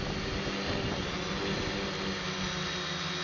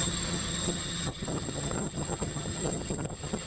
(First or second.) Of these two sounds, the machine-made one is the second